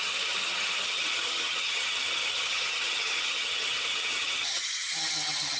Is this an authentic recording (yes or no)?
no